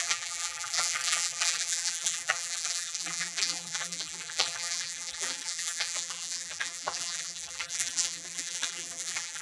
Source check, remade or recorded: remade